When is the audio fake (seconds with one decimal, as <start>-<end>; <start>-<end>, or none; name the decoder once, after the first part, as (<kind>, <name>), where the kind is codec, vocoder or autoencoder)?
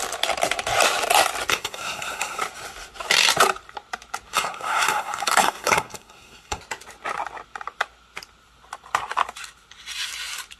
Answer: 1.5-2.4 (codec, SNAC); 4.3-6.6